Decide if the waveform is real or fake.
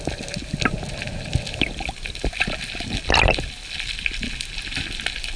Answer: real